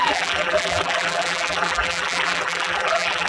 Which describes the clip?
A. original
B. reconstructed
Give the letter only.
B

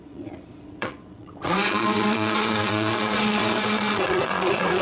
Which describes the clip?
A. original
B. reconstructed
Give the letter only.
B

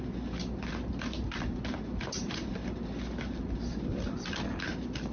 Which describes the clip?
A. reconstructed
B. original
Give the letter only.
B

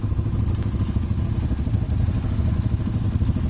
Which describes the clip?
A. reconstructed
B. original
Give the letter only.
B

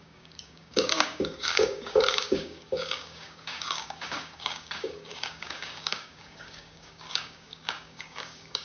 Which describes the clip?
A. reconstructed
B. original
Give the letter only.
A